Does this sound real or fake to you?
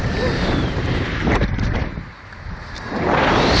fake